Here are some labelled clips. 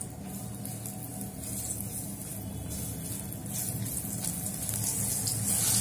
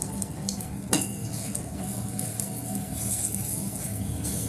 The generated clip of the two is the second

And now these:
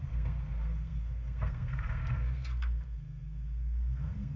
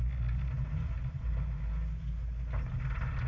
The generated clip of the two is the first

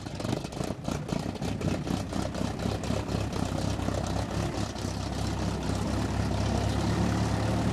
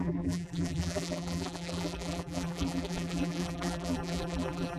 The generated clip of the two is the second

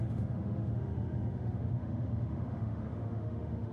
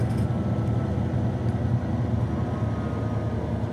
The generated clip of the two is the first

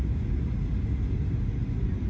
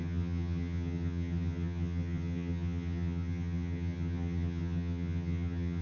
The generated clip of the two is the second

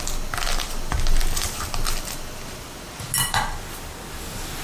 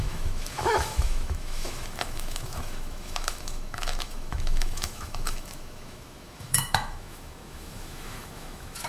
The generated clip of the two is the second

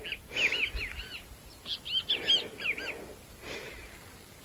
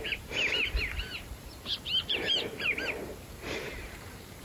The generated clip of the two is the second